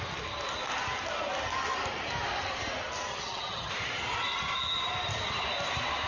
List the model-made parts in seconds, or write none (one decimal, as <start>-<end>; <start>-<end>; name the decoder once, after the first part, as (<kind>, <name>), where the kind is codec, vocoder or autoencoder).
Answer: 3.1-3.7 (vocoder, HiFi-GAN)